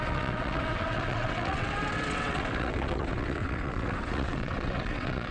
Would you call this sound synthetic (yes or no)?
yes